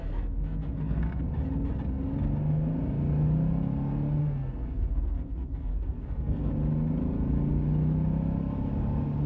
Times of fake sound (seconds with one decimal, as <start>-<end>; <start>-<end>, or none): 0.0-1.2; 4.2-6.5